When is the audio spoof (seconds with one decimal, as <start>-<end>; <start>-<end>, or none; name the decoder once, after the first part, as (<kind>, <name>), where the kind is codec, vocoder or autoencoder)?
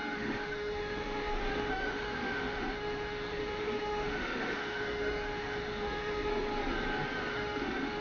0.0-6.3 (autoencoder, DAC-VAE); 7.3-8.0